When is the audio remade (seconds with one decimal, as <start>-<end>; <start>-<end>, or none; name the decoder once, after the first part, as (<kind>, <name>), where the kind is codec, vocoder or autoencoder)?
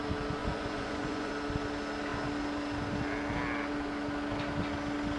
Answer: 0.4-1.3 (vocoder, Vocos)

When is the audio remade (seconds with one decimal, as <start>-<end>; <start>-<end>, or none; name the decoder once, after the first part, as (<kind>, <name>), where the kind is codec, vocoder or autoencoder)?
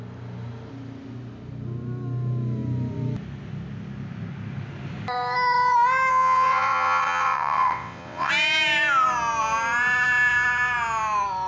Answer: 6.1-8.3 (vocoder, WaveNeXt)